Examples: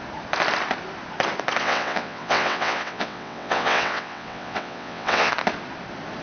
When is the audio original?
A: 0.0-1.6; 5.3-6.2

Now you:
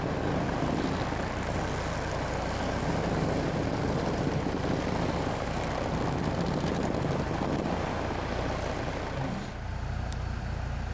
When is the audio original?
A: 0.0-10.9